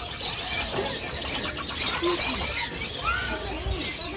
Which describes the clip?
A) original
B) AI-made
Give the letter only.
A